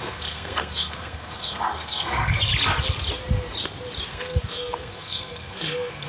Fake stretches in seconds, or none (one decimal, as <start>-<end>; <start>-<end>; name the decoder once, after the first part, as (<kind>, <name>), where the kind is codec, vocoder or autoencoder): 0.0-2.5 (codec, SNAC); 4.1-6.1